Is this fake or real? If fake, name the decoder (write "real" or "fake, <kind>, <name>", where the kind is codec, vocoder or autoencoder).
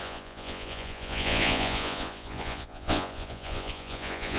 fake, vocoder, Vocos